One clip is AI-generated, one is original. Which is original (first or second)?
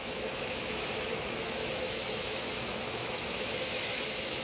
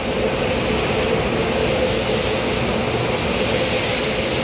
second